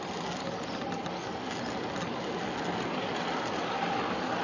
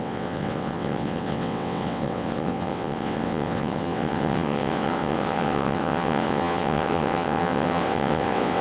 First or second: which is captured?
first